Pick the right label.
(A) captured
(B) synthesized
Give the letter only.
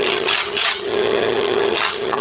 B